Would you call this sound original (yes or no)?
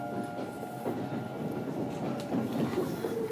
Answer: yes